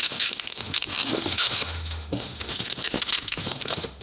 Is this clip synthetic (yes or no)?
yes